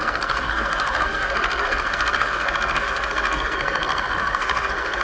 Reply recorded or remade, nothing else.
remade